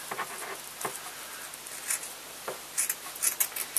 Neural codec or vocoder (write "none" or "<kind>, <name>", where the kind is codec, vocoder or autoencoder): none